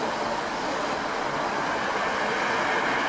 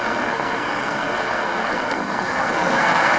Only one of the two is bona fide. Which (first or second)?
first